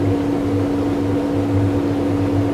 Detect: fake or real real